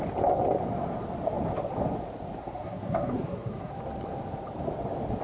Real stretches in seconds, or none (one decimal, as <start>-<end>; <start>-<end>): 0.0-2.4; 3.7-5.2